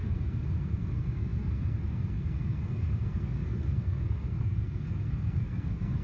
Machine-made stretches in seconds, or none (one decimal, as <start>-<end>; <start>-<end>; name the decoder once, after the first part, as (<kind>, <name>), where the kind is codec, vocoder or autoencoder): 0.0-6.0 (codec, SNAC)